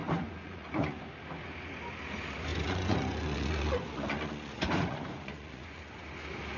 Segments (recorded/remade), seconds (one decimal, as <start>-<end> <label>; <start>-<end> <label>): 0.0-1.0 remade; 1.0-2.5 recorded; 2.5-6.0 remade; 6.0-6.6 recorded